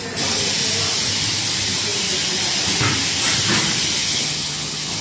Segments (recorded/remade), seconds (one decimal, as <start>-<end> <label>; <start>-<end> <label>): 0.0-4.0 recorded; 4.0-5.0 remade